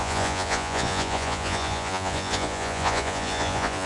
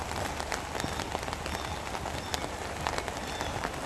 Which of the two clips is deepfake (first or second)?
first